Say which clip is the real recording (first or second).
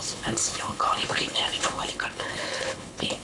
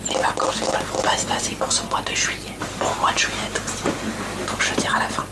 second